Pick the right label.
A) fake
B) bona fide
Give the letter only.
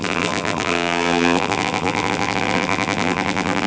A